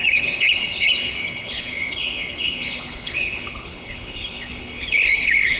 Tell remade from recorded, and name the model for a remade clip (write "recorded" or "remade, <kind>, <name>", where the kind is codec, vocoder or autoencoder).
remade, codec, HILCodec